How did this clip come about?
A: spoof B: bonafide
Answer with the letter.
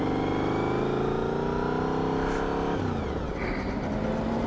B